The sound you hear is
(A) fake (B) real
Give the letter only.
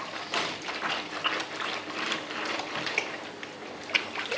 B